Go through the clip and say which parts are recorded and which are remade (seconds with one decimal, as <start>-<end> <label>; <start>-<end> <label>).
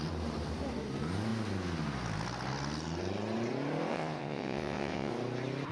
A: 0.0-3.9 recorded; 3.9-5.1 remade; 5.1-5.7 recorded